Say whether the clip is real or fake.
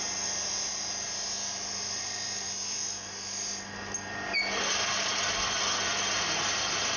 real